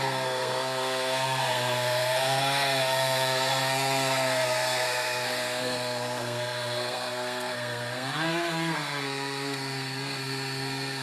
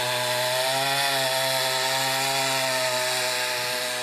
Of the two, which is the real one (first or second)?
second